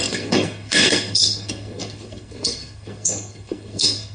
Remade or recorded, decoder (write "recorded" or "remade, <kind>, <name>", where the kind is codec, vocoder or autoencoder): remade, codec, SNAC